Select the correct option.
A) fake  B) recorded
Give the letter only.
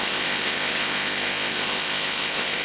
A